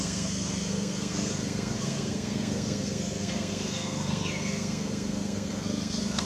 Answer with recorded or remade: remade